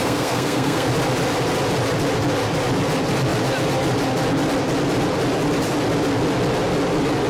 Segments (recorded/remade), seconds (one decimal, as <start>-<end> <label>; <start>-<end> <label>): 0.0-0.9 remade; 0.9-7.3 recorded